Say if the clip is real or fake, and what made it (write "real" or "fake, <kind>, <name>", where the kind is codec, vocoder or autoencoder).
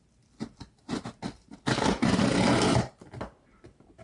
real